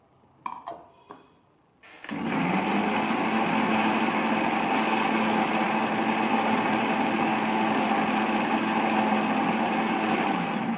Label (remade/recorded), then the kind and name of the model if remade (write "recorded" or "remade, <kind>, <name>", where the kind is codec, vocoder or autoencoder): recorded